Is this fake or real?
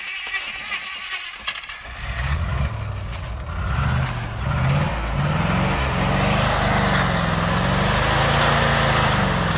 real